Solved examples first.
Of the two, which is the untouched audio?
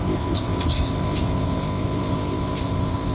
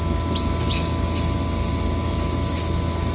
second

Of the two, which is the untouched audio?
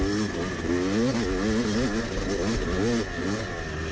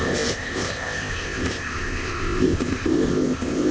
first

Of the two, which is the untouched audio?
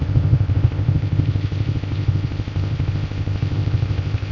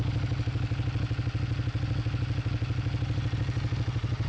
second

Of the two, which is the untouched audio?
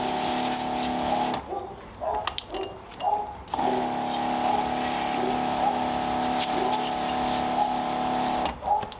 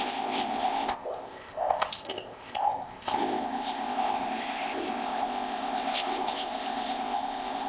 first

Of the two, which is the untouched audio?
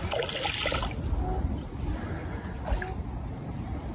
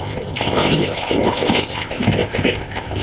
first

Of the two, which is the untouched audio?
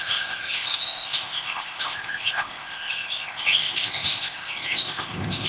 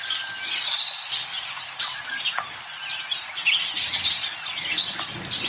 second